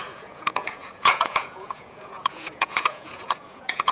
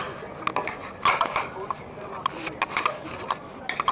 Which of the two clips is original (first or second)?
second